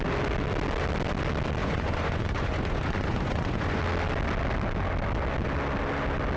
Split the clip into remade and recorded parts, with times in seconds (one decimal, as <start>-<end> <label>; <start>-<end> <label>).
0.0-1.6 recorded; 1.6-3.8 remade; 3.8-6.4 recorded